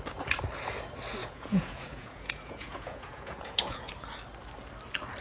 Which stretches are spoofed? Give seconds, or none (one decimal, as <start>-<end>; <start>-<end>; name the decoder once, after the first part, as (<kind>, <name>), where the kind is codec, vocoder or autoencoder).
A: 1.2-3.9 (vocoder, Vocos)